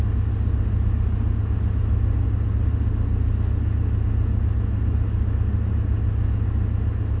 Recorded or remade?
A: recorded